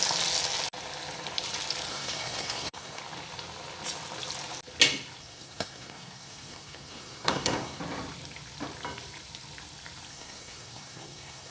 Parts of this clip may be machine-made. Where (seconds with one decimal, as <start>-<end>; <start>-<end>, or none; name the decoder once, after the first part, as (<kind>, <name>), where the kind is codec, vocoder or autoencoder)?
1.9-3.0 (codec, SNAC); 5.2-7.8; 10.1-11.5